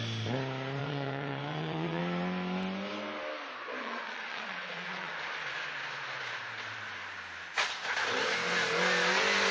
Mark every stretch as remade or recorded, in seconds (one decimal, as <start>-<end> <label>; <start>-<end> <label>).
0.0-0.8 recorded; 0.8-2.0 remade; 2.0-3.8 recorded; 3.8-5.1 remade; 5.1-9.5 recorded